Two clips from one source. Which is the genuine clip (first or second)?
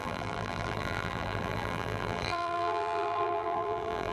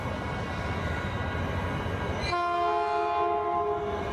second